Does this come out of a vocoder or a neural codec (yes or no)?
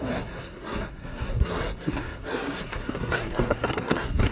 yes